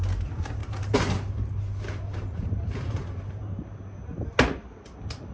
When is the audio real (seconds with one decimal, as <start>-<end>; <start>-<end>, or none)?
0.0-0.6; 3.8-5.3